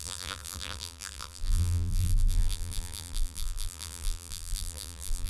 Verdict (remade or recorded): remade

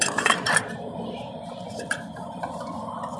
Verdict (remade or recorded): remade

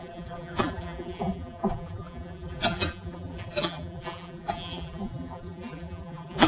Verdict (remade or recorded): remade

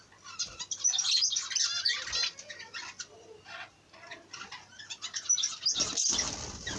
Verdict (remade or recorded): recorded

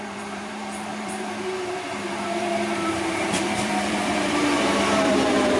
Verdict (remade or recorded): remade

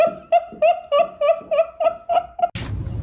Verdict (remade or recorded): recorded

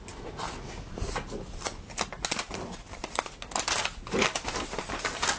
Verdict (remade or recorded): recorded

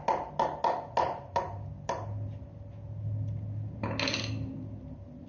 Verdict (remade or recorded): recorded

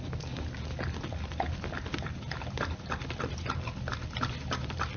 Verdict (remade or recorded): recorded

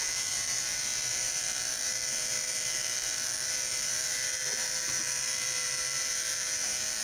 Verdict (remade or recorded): remade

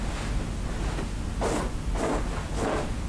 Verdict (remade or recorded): recorded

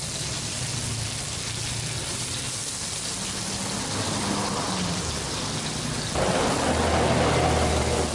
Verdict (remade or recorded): recorded